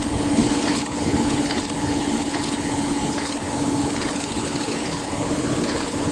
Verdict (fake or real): fake